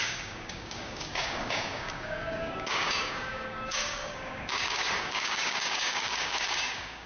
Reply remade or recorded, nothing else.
remade